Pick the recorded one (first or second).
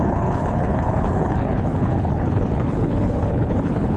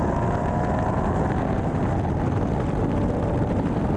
second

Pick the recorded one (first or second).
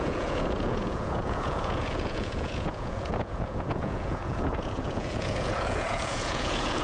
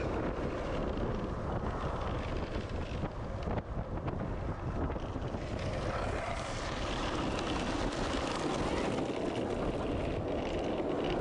second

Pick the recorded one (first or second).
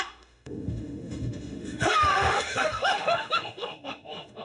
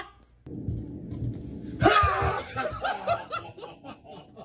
second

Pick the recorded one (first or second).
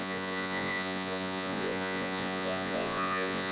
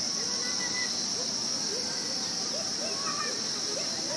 second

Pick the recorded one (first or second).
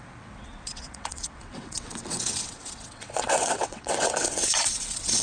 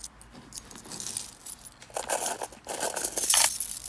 second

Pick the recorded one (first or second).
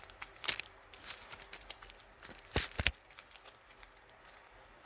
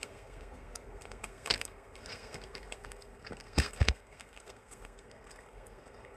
first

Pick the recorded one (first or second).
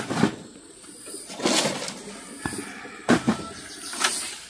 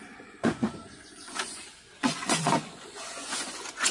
first